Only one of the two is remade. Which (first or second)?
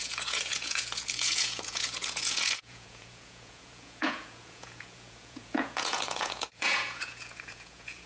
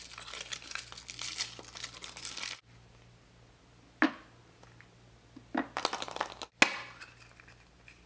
first